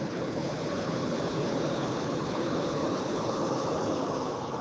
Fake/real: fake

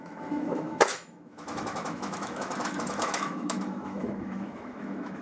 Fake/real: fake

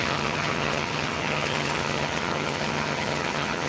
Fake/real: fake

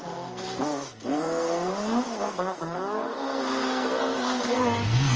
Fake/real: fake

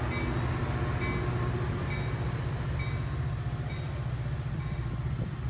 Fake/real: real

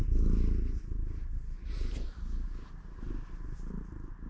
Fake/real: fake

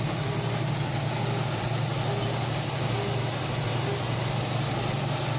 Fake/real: real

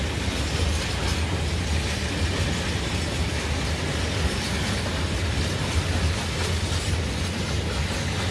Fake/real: real